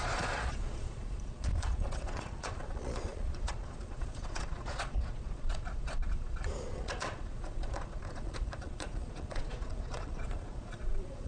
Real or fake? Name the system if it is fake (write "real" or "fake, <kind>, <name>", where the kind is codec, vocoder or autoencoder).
fake, vocoder, Vocos